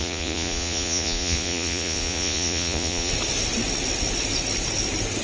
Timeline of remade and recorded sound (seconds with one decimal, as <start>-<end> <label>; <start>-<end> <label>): 0.0-3.1 remade; 3.1-5.2 recorded

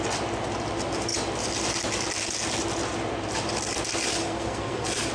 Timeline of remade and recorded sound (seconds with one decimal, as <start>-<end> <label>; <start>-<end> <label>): 0.0-4.1 recorded; 4.1-5.1 remade

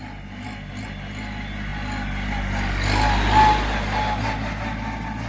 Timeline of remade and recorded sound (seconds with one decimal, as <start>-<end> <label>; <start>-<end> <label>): 0.0-5.3 recorded

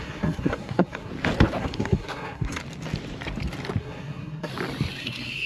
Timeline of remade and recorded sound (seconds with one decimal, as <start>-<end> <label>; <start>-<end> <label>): 0.0-1.1 remade; 1.1-1.6 recorded; 1.6-2.6 remade; 2.6-3.8 recorded; 3.8-4.5 remade; 4.5-5.0 recorded; 5.0-5.5 remade

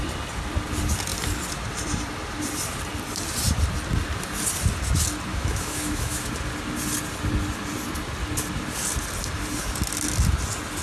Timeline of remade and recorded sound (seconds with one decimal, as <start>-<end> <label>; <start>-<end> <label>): 0.0-5.3 recorded; 5.3-6.3 remade; 6.3-10.8 recorded

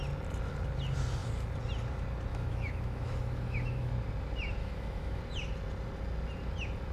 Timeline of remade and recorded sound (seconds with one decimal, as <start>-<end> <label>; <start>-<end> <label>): 0.0-2.3 recorded; 2.3-3.9 remade; 3.9-4.6 recorded; 4.6-5.2 remade; 5.2-6.9 recorded

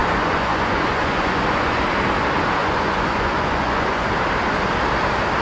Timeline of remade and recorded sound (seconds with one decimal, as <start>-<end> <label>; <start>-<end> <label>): 0.0-1.8 remade; 1.8-2.6 recorded; 2.6-4.1 remade; 4.1-5.4 recorded